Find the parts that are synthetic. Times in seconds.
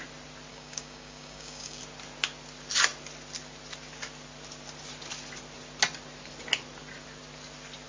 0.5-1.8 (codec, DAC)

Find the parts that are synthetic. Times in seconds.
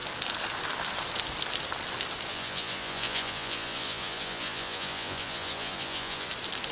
2.3-6.3 (vocoder, Vocos)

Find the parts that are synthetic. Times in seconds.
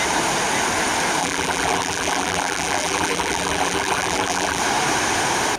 1.2-4.6 (vocoder, BigVGAN v2)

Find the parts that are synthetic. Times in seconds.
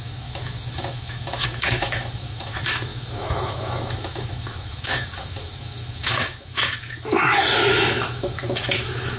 0.0-9.2 (autoencoder, DAC-VAE)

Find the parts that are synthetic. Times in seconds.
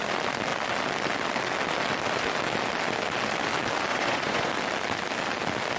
3.9-4.5 (vocoder, Vocos)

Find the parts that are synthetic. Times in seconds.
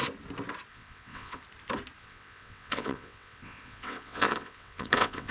0.7-1.4 (vocoder, WaveNeXt); 2.0-5.3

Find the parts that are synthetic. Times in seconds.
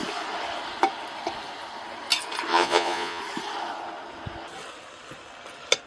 2.5-3.2 (vocoder, Vocos)